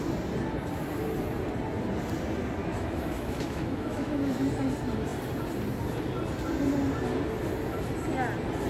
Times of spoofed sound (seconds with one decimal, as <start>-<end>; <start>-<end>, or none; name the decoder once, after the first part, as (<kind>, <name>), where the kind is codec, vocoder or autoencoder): 2.6-4.5 (autoencoder, DAC-VAE)